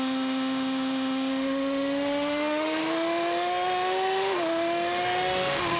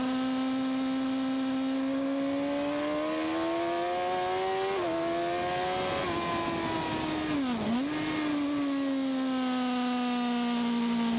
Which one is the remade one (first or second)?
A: first